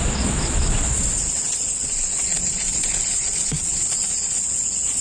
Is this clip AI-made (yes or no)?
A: yes